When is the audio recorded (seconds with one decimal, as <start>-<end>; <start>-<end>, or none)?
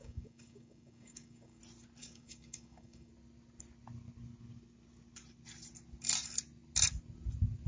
1.6-2.0; 3.1-7.7